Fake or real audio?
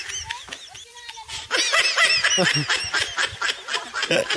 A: real